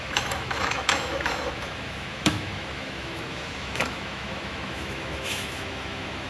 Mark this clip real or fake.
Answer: fake